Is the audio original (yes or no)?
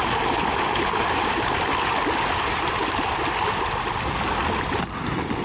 yes